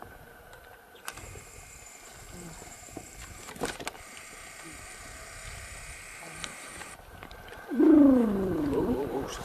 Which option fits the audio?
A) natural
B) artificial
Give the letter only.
B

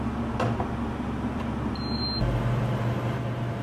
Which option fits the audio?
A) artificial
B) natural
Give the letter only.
B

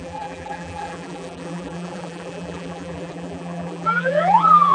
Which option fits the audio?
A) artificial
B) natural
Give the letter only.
A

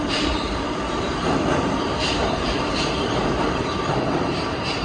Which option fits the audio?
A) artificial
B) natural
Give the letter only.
A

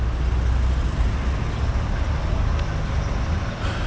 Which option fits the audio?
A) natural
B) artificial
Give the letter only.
A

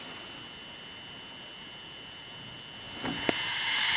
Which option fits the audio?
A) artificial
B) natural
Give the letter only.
B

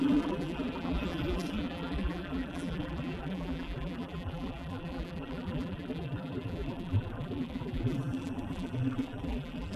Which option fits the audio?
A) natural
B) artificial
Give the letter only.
B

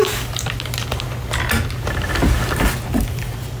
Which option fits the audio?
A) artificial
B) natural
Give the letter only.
B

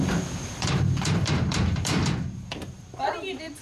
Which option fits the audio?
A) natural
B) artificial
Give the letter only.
B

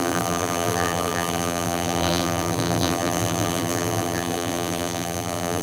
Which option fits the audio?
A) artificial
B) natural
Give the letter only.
A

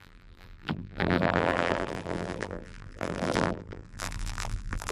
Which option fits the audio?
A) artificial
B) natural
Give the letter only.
A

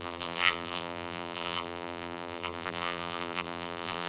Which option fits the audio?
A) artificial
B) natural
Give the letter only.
A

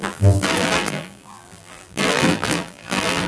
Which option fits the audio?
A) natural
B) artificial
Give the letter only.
B